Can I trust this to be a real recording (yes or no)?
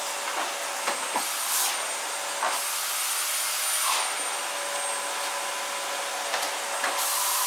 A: yes